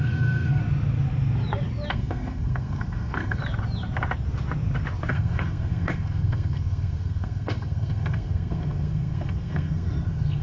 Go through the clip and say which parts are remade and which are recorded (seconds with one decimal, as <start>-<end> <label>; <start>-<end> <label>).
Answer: 0.0-0.6 remade; 0.6-1.9 recorded; 1.9-3.4 remade; 3.4-5.1 recorded; 5.1-10.4 remade